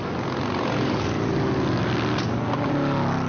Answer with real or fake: real